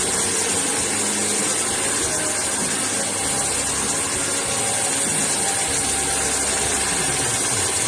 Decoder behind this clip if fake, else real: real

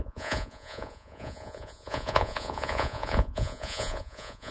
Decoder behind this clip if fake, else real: fake, vocoder, Vocos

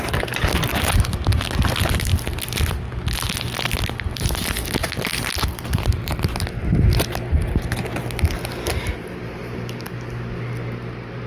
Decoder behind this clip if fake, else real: real